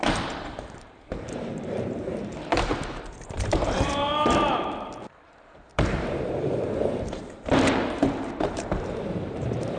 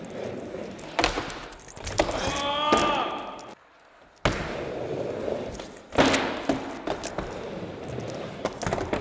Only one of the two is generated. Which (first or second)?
first